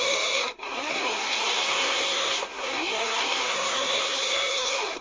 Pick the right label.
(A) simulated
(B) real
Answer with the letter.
A